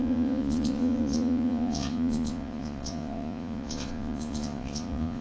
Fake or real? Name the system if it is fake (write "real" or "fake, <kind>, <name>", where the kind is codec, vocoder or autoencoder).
fake, vocoder, Vocos